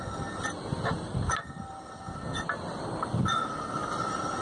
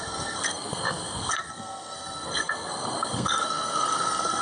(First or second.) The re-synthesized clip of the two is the second